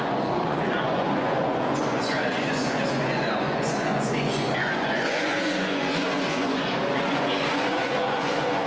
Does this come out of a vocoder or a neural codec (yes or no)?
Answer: yes